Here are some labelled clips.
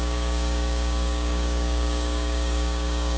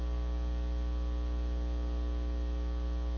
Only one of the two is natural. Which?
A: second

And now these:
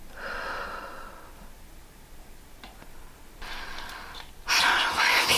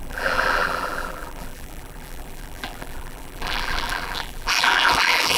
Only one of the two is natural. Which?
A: first